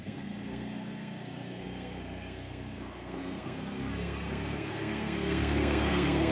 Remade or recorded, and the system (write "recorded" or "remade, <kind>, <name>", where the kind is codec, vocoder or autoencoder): remade, codec, SNAC